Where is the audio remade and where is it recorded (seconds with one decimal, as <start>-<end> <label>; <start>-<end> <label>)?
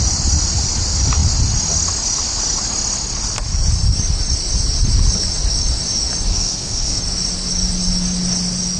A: 0.0-6.3 recorded; 6.3-7.0 remade; 7.0-8.8 recorded